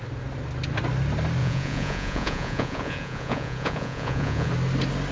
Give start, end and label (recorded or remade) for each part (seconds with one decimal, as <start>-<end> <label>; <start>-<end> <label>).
0.0-1.4 recorded; 1.4-4.5 remade; 4.5-5.1 recorded